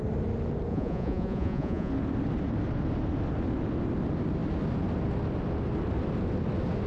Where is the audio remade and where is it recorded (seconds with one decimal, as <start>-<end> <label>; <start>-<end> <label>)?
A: 0.0-0.7 recorded; 0.7-1.9 remade; 1.9-6.9 recorded

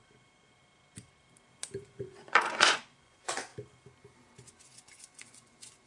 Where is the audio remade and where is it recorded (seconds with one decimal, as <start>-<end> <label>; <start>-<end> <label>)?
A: 0.0-1.8 recorded; 1.8-3.5 remade; 3.5-4.4 recorded; 4.4-5.9 remade